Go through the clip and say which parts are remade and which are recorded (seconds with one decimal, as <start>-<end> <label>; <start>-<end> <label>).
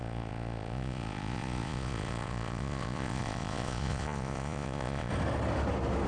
0.0-5.1 remade; 5.1-6.1 recorded